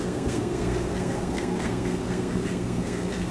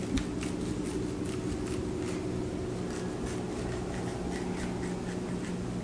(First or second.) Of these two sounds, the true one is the second